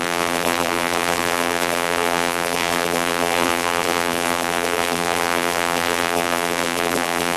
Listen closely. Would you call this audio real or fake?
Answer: fake